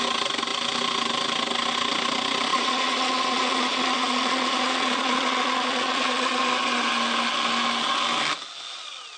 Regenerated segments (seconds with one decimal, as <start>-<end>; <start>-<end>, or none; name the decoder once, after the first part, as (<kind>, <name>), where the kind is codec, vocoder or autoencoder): 2.5-6.4 (vocoder, Vocos)